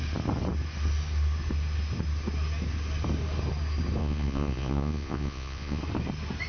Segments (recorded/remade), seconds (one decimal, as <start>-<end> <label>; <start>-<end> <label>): 0.0-4.0 recorded; 4.0-5.8 remade; 5.8-6.5 recorded